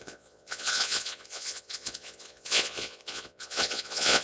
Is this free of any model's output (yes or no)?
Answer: no